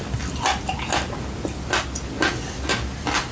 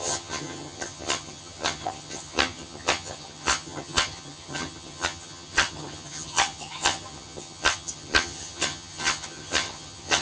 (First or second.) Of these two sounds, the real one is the first